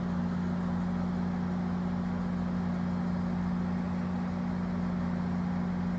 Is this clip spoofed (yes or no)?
no